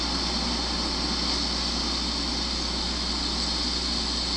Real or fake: real